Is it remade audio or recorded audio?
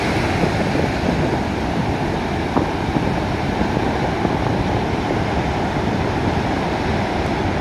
recorded